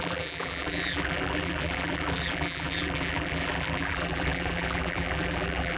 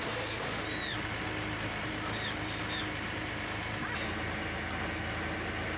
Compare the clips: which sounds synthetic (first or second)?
first